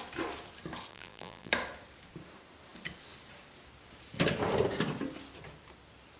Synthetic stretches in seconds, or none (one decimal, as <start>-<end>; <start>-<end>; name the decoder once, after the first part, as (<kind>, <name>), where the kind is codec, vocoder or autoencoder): 0.9-1.5 (vocoder, BigVGAN v2)